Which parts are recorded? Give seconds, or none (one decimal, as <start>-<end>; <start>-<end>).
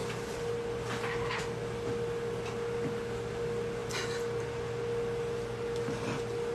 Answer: 0.0-6.5